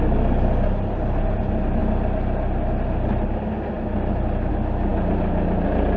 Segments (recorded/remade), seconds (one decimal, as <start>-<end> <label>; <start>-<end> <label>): 0.0-6.0 recorded